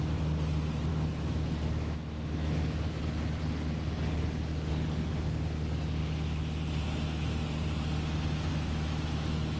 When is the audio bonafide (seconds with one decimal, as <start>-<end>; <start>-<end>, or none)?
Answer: 0.0-0.9; 3.0-8.5